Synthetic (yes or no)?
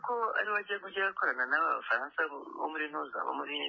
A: no